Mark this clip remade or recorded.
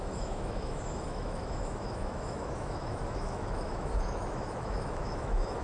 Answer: remade